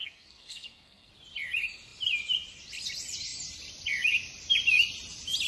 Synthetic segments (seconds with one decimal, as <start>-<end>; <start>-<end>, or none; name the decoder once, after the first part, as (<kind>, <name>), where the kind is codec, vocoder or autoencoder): 0.0-1.1 (codec, SNAC)